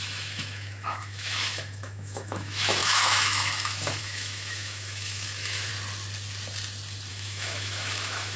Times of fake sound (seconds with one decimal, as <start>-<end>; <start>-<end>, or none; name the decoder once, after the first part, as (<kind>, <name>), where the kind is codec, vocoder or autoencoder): 0.0-5.7 (autoencoder, DAC-VAE); 7.1-8.4